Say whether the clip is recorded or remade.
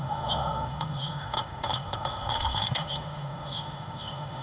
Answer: remade